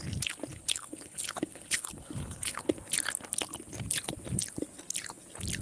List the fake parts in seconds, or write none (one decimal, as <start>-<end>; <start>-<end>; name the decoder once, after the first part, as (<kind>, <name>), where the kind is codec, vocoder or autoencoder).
0.5-2.7 (codec, HILCodec)